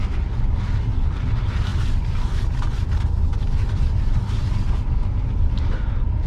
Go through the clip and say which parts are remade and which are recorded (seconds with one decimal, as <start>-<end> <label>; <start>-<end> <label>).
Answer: 0.0-6.3 recorded